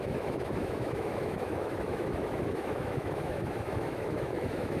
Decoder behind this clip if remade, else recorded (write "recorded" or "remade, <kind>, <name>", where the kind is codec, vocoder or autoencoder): remade, autoencoder, DAC-VAE